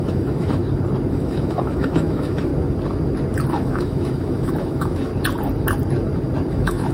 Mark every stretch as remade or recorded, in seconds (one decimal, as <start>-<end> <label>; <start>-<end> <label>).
0.0-0.6 remade; 0.6-1.1 recorded; 1.1-2.5 remade; 2.5-3.5 recorded; 3.5-5.1 remade; 5.1-6.5 recorded; 6.5-6.9 remade